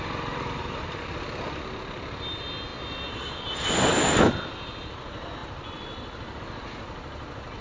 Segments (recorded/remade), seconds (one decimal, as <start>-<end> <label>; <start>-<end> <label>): 0.0-7.6 recorded